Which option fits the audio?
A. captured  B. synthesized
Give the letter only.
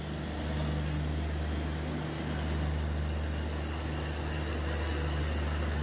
A